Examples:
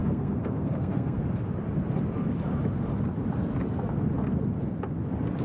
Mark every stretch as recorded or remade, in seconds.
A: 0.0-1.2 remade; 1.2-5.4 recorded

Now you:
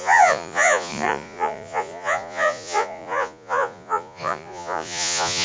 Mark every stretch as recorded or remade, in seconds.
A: 0.0-5.4 remade

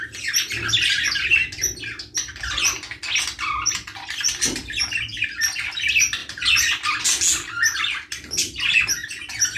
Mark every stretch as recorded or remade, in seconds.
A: 0.0-6.2 recorded; 6.2-7.0 remade; 7.0-9.6 recorded

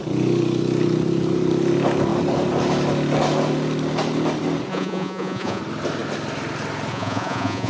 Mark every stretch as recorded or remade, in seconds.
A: 0.0-4.7 recorded; 4.7-5.6 remade; 5.6-6.9 recorded; 6.9-7.7 remade

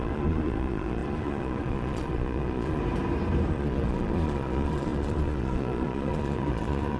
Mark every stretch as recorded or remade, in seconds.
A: 0.0-2.8 remade; 2.8-3.5 recorded; 3.5-7.0 remade

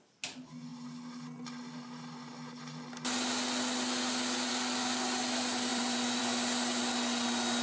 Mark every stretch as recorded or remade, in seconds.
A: 0.0-5.7 recorded; 5.7-6.2 remade; 6.2-7.6 recorded

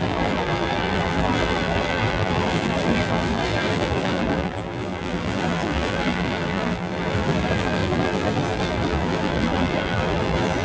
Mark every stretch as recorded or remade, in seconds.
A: 0.0-10.6 remade

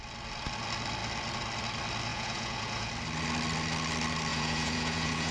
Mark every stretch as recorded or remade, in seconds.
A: 0.0-2.1 recorded; 2.1-2.9 remade; 2.9-4.3 recorded; 4.3-5.3 remade